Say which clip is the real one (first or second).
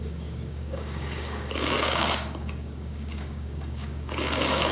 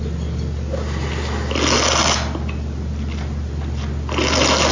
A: second